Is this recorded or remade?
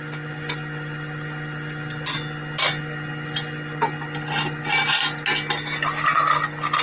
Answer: recorded